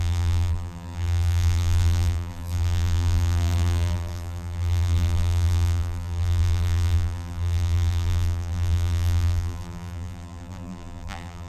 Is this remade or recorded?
remade